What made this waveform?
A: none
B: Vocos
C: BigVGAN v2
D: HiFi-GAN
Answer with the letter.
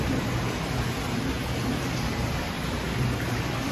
C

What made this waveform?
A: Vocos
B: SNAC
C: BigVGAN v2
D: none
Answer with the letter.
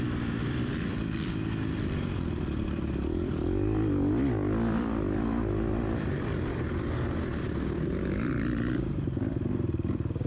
C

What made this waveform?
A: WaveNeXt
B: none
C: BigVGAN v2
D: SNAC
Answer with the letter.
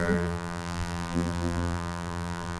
C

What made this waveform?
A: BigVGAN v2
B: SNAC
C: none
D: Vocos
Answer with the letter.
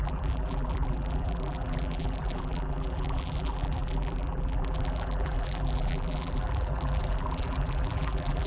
A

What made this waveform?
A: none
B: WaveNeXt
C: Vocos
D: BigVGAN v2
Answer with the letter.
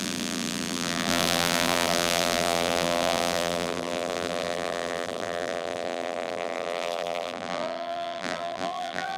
D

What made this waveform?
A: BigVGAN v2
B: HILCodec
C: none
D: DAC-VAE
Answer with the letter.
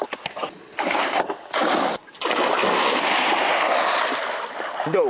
C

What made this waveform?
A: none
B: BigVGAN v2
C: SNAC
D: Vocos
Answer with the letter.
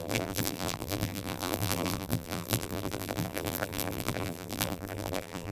B